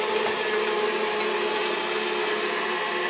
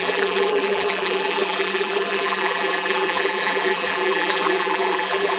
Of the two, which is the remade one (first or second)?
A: second